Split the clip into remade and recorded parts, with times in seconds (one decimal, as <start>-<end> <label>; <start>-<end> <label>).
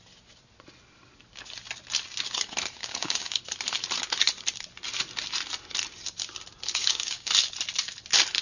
0.0-2.8 recorded; 2.8-3.4 remade; 3.4-6.8 recorded; 6.8-7.3 remade; 7.3-8.4 recorded